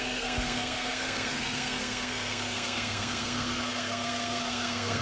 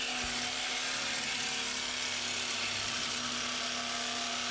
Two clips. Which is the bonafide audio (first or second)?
second